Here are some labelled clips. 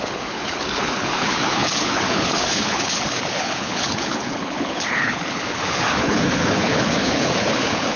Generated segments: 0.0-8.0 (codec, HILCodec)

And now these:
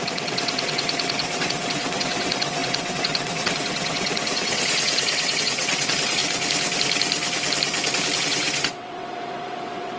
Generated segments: 0.0-6.2 (vocoder, WaveNeXt); 8.2-10.0

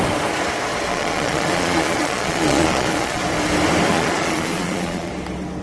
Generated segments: 0.9-3.2 (vocoder, Vocos); 3.9-5.1

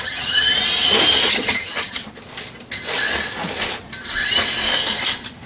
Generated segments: 0.0-0.5 (vocoder, HiFi-GAN); 1.3-2.0

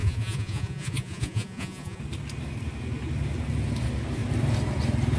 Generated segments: 0.0-2.0 (vocoder, Vocos)